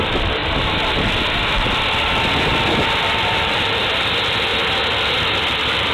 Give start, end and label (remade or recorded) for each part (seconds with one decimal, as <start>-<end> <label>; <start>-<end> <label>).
0.0-0.4 remade; 0.4-3.0 recorded; 3.0-4.5 remade; 4.5-5.4 recorded; 5.4-5.9 remade